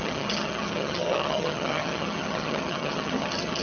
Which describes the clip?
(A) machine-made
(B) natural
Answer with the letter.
A